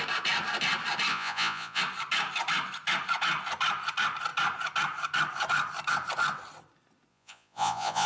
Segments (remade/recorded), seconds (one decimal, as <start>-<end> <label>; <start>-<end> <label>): 0.0-1.1 recorded; 1.1-1.8 remade; 1.8-7.1 recorded; 7.1-8.1 remade